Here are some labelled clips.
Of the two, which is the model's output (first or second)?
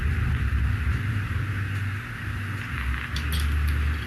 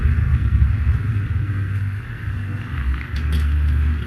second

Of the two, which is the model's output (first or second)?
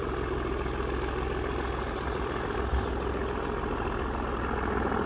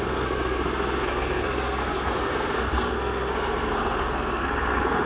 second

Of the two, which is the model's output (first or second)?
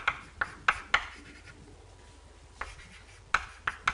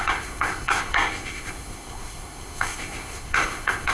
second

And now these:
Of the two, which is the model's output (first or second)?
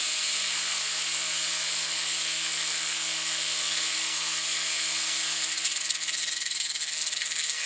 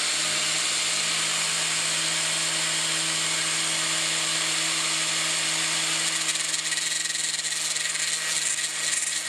first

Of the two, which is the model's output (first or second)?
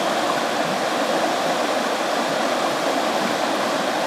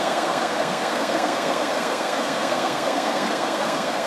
second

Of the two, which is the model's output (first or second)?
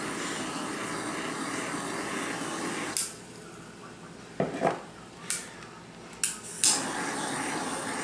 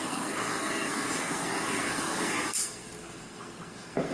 second